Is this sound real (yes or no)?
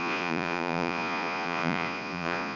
no